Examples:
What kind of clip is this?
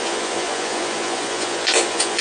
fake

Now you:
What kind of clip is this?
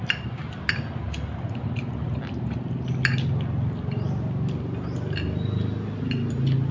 real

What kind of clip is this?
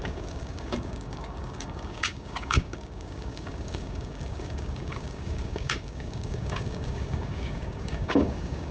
fake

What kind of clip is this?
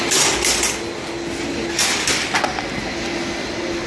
real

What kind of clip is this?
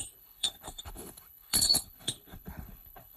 fake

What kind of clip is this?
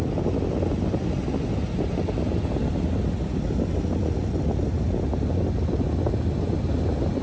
real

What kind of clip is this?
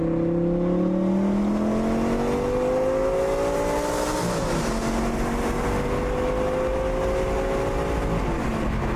real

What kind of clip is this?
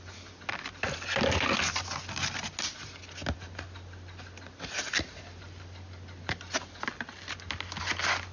real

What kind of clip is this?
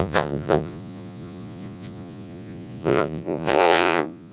fake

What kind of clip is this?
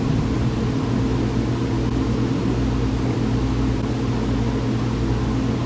real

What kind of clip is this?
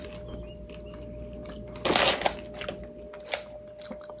real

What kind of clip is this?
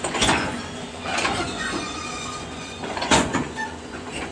fake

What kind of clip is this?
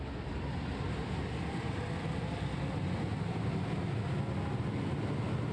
real